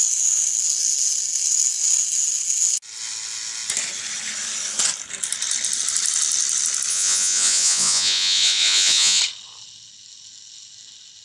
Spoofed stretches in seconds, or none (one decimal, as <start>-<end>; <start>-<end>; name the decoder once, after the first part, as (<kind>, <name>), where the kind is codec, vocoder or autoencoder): 6.9-9.2 (vocoder, Vocos)